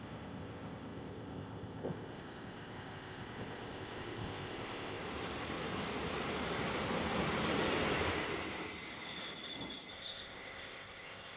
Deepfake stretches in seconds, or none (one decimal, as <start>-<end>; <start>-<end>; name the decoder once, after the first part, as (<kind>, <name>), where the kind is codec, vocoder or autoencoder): 0.0-5.0 (codec, ZipCodec); 9.9-11.4